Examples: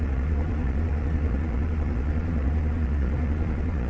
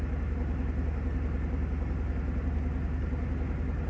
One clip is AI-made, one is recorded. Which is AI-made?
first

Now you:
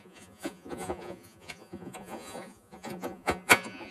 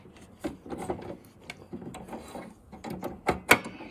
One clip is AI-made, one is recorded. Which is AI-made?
first